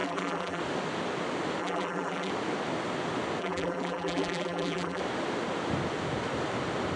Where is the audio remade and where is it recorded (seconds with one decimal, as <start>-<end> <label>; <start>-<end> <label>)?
0.0-0.6 remade; 0.6-1.6 recorded; 1.6-2.3 remade; 2.3-3.4 recorded; 3.4-5.0 remade; 5.0-7.0 recorded